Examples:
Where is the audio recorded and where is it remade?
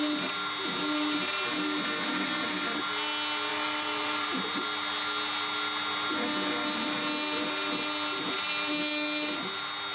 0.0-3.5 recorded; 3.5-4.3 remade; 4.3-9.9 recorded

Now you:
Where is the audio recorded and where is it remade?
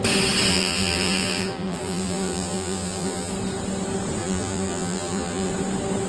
0.0-0.5 recorded; 0.5-3.3 remade; 3.3-4.2 recorded; 4.2-5.5 remade; 5.5-6.1 recorded